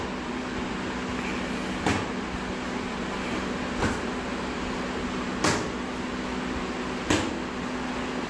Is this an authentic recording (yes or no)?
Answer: yes